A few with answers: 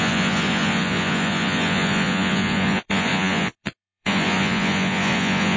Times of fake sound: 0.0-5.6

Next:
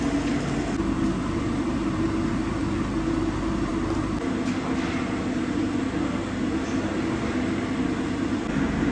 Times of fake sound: none

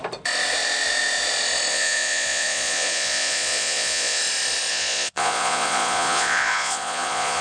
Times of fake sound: 1.7-4.2; 4.7-7.4

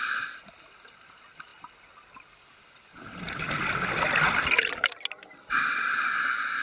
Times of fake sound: none

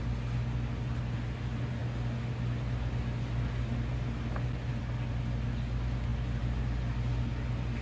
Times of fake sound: none

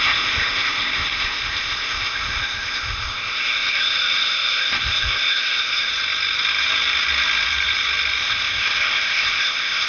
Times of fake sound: 0.0-5.9; 8.2-9.9

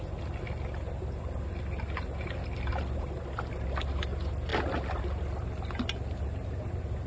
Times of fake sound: none